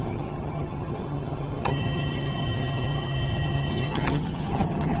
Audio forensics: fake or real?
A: fake